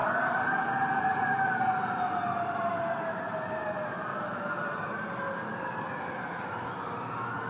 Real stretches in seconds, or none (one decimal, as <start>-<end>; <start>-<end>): 0.0-7.5